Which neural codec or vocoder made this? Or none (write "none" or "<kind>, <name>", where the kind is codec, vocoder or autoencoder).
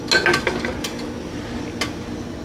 none